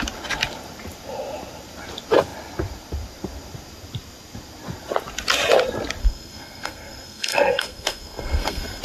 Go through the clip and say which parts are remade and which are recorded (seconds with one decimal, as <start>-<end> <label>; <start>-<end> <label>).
0.0-6.0 recorded; 6.0-8.8 remade